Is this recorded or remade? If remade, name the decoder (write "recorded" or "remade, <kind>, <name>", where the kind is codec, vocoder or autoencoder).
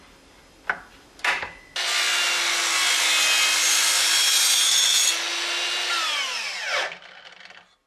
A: recorded